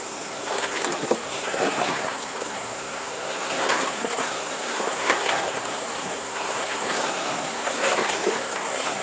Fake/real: fake